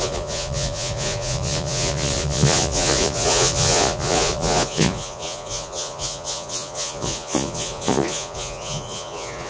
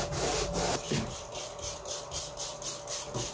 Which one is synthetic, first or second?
first